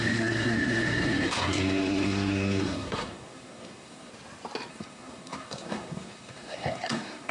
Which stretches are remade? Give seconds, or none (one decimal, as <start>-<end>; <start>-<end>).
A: 0.0-4.1; 4.7-7.3